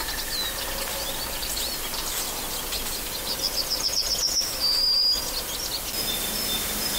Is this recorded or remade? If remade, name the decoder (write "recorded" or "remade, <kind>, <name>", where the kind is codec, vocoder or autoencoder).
recorded